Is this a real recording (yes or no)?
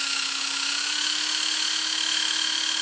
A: no